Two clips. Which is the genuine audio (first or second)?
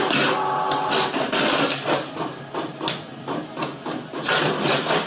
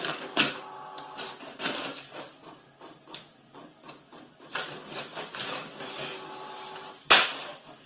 first